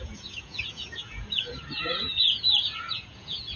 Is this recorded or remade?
remade